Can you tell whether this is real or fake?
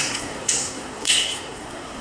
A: fake